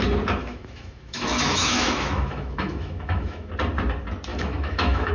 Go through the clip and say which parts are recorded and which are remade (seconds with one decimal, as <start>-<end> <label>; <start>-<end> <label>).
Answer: 0.0-0.4 recorded; 0.4-3.5 remade; 3.5-4.3 recorded; 4.3-5.1 remade